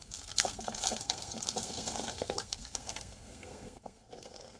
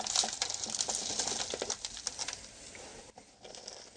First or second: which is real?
second